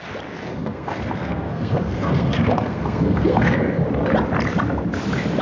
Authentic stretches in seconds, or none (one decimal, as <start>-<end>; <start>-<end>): 0.0-0.5; 3.6-5.4